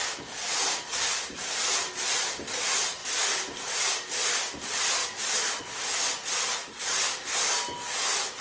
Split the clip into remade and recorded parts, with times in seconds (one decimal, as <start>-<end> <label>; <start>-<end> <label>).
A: 0.0-0.9 recorded; 0.9-2.0 remade; 2.0-3.0 recorded; 3.0-3.9 remade; 3.9-5.0 recorded; 5.0-5.6 remade; 5.6-8.4 recorded